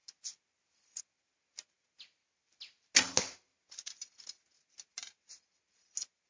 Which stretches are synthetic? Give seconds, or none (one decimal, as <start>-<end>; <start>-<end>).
none